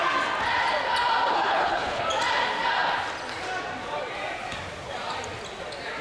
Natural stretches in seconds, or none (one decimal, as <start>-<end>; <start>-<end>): 0.0-1.3; 2.0-6.0